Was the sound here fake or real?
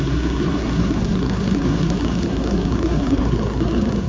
fake